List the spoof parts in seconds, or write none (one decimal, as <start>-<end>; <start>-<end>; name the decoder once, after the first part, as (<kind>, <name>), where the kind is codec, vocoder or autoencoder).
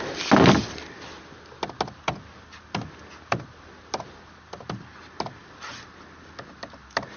none